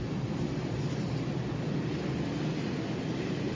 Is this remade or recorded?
recorded